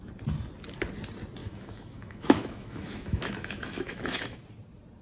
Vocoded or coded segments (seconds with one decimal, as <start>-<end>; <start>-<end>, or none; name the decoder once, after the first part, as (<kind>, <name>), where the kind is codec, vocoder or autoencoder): 1.4-4.4 (autoencoder, DAC-VAE)